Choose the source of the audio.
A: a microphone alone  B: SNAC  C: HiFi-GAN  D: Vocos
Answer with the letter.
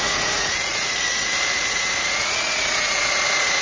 D